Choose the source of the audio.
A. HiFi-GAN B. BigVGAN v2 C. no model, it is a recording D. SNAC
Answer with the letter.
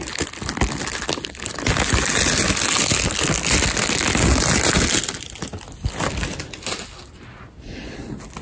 C